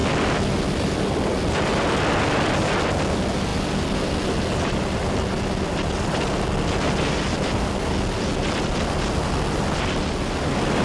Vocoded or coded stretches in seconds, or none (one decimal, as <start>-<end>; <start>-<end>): none